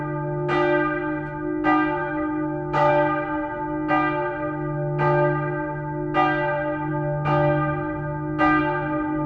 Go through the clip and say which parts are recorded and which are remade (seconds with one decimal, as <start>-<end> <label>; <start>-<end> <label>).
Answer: 0.0-2.0 recorded; 2.0-2.9 remade; 2.9-9.3 recorded